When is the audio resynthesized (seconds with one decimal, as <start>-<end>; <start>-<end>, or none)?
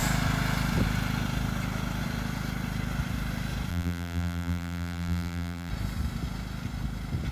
3.7-5.7